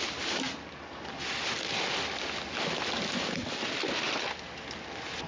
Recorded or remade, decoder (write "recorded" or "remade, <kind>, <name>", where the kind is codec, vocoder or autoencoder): recorded